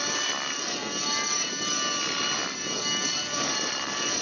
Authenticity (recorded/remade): recorded